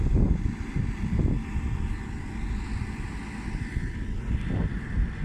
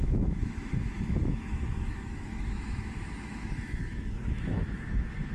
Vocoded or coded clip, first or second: second